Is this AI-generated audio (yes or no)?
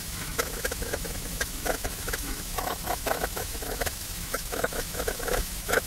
yes